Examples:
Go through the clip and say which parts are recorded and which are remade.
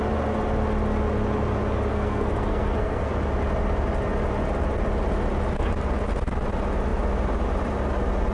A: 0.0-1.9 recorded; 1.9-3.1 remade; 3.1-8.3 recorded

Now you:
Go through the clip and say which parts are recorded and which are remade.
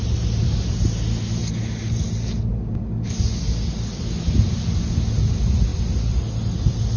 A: 0.0-5.7 recorded; 5.7-6.2 remade; 6.2-7.0 recorded